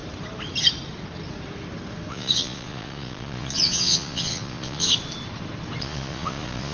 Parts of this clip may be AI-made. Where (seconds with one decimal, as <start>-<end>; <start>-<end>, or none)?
2.1-4.9; 5.8-6.7